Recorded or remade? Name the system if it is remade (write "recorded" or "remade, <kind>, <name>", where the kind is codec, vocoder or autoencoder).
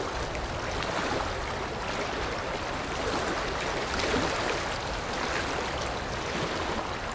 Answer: recorded